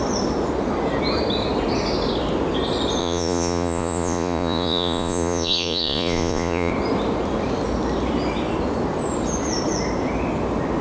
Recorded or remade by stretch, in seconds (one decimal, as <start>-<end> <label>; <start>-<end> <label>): 0.0-3.0 recorded; 3.0-6.7 remade; 6.7-10.8 recorded